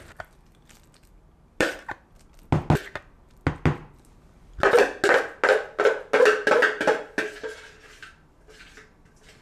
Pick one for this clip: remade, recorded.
recorded